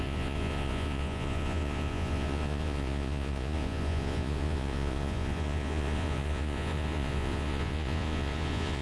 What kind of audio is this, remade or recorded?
remade